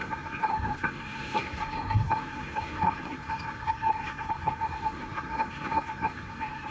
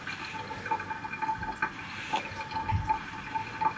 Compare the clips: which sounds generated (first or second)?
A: first